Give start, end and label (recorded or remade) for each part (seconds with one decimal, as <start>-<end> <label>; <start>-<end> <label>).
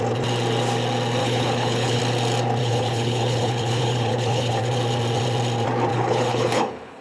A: 0.0-1.2 recorded; 1.2-2.0 remade; 2.0-2.6 recorded; 2.6-4.7 remade; 4.7-5.9 recorded; 5.9-7.0 remade